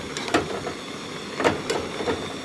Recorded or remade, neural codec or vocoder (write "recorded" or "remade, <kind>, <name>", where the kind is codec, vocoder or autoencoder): recorded